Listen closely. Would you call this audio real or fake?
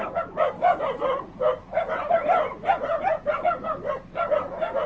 real